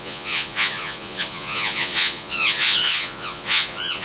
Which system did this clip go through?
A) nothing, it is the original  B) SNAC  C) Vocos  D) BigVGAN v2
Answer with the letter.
C